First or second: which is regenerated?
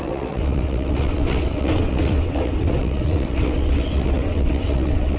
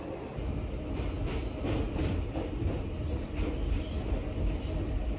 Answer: first